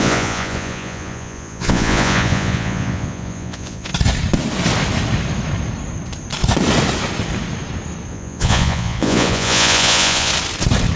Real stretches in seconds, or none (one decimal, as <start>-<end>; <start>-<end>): 3.9-8.1; 10.3-11.0